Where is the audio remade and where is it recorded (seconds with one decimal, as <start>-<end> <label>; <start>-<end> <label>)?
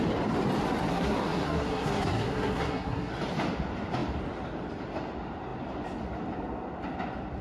0.0-0.9 recorded; 0.9-3.1 remade; 3.1-7.4 recorded